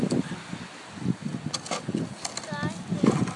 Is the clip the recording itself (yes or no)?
yes